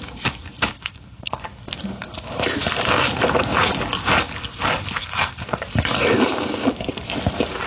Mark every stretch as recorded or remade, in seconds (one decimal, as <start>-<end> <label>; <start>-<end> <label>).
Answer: 0.0-0.7 recorded; 0.7-1.3 remade; 1.3-5.0 recorded; 5.0-5.6 remade; 5.6-7.7 recorded